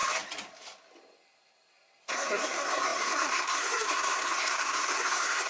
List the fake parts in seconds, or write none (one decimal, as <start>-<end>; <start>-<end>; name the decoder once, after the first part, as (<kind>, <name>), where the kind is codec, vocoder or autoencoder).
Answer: 2.1-5.5 (codec, SNAC)